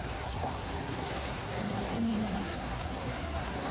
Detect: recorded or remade remade